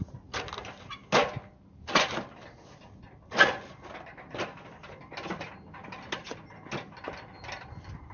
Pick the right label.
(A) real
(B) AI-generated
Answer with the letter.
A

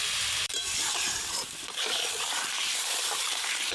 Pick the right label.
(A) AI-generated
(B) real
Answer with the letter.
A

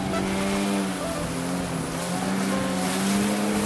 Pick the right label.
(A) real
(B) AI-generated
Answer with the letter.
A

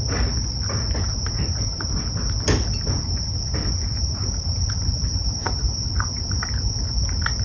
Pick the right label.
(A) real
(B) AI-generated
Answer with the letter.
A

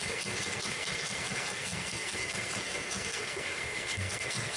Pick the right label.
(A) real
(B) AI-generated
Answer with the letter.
B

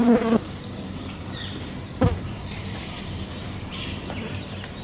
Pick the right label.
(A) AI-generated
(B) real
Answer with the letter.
A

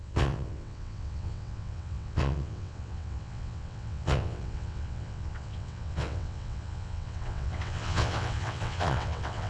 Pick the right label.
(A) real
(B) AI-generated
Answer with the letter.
B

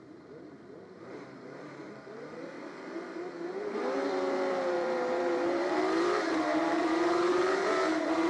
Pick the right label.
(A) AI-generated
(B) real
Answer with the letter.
A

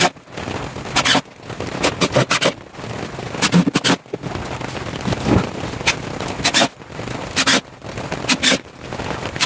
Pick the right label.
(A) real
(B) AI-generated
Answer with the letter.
A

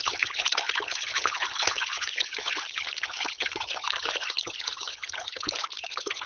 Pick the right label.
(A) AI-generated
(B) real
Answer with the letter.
A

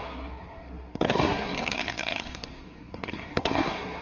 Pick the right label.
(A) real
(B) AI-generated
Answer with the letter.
B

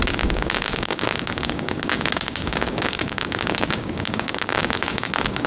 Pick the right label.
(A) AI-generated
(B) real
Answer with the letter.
A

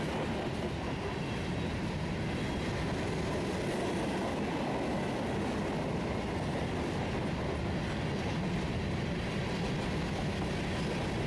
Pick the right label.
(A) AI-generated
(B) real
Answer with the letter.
B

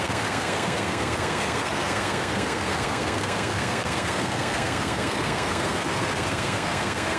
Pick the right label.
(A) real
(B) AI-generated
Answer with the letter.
B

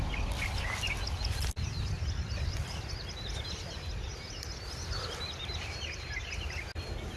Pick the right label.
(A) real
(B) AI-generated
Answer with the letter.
A